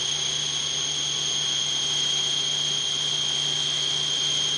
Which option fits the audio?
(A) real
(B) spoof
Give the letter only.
A